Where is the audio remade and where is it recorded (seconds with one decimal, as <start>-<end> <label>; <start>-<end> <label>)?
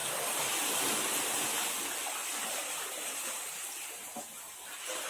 0.0-2.2 recorded; 2.2-4.2 remade; 4.2-5.1 recorded